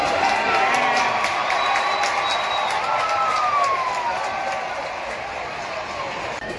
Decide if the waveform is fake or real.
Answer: real